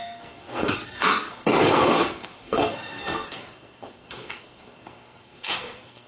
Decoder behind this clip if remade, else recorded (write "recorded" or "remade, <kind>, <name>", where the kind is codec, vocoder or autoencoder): remade, codec, SNAC